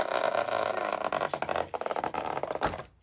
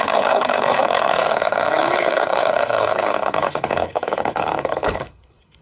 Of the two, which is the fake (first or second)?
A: second